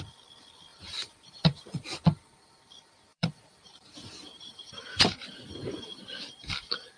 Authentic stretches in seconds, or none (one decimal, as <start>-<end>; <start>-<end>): 0.0-0.7; 1.6-3.1; 6.0-7.0